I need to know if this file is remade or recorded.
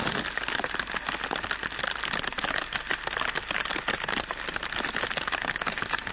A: recorded